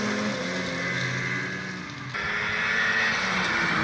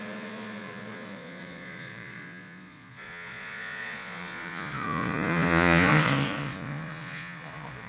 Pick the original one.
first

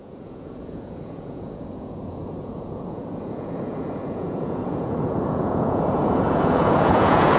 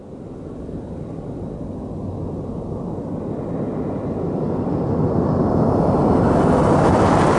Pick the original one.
second